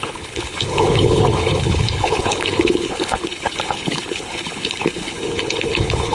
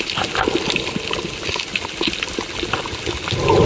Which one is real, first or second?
second